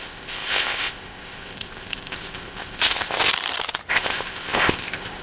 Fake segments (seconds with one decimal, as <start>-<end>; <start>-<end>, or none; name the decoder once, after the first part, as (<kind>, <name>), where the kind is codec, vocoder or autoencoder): 0.0-3.3 (codec, ZipCodec); 3.9-5.2